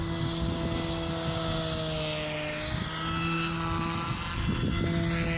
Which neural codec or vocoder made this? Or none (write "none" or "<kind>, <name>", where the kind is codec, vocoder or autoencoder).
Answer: none